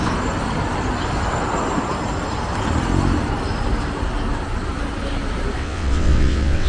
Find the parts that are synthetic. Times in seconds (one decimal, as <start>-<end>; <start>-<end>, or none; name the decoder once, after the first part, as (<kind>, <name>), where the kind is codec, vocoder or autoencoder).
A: 5.6-6.7 (vocoder, WaveNeXt)